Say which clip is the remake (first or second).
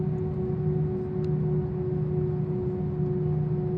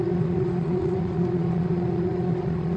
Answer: second